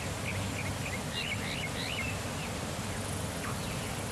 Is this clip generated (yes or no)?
no